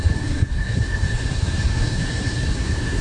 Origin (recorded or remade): remade